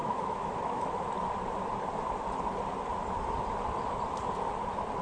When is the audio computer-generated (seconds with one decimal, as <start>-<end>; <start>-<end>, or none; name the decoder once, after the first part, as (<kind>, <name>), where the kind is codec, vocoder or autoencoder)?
0.0-1.0 (autoencoder, DAC-VAE)